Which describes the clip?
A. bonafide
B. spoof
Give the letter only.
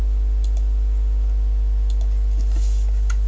A